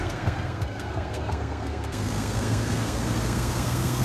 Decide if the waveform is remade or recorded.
remade